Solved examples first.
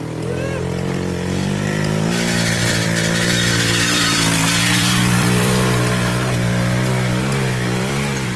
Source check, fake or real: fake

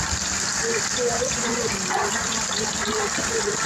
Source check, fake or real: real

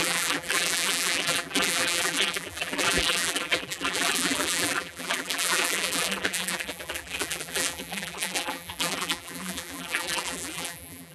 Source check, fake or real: fake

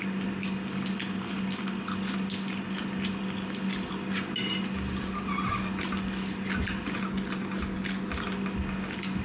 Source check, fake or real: real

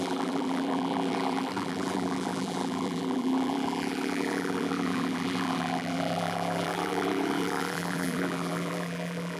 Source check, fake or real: fake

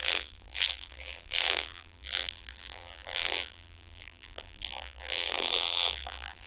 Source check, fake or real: fake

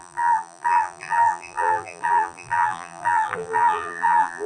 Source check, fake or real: fake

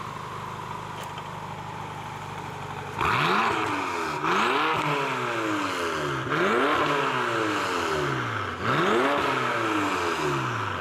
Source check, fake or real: real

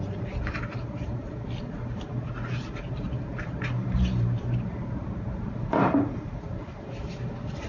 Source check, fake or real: fake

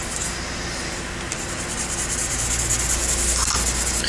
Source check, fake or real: real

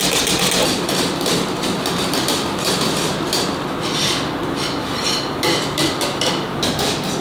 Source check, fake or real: fake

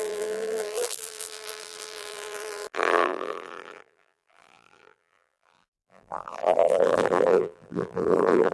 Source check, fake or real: fake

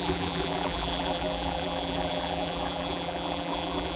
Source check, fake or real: fake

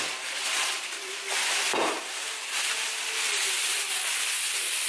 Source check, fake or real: fake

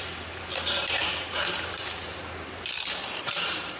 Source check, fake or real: fake